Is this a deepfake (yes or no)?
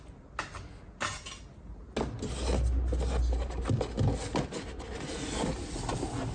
no